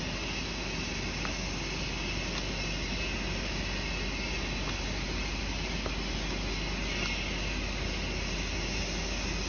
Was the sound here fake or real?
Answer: real